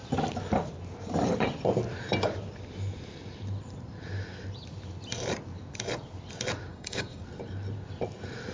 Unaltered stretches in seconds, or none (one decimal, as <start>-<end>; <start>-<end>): 0.0-6.7; 7.2-8.5